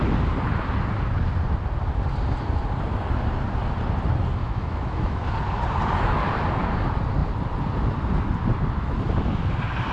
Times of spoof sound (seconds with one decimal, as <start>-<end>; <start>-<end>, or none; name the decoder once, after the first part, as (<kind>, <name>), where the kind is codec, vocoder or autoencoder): 4.4-5.3 (autoencoder, DAC-VAE)